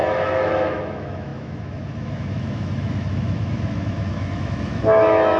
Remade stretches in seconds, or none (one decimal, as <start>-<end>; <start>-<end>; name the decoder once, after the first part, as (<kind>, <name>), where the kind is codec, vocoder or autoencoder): 0.0-5.4 (autoencoder, DAC-VAE)